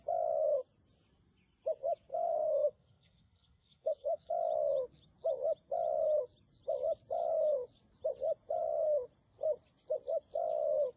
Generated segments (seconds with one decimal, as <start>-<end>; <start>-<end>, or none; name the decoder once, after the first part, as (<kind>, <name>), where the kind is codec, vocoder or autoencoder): 2.1-4.3 (codec, SNAC)